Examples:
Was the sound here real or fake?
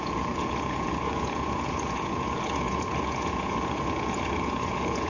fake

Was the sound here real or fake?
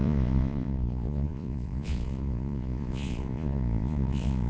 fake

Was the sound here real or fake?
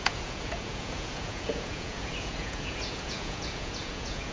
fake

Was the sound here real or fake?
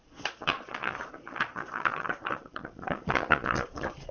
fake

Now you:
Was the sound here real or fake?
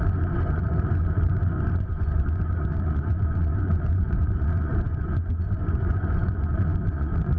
fake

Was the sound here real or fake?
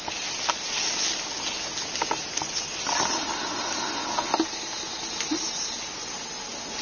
real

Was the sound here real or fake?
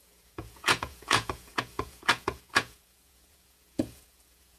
fake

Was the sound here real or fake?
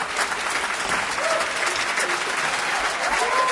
real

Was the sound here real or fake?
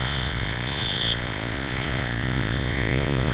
fake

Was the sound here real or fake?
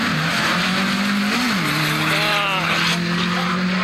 real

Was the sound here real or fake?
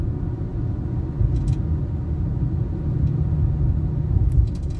real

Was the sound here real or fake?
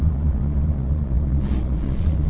fake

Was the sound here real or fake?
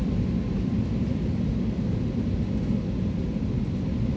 real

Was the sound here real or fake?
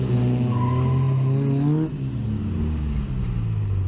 real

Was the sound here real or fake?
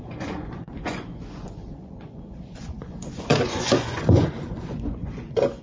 fake